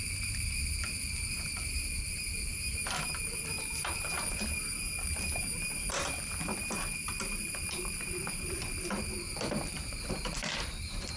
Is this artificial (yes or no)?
yes